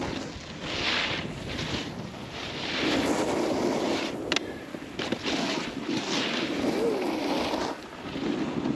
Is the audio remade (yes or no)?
no